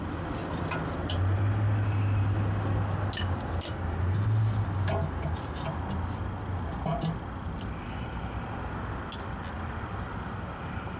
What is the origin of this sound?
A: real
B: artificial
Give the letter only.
A